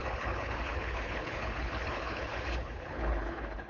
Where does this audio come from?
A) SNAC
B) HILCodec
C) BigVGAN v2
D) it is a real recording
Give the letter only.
B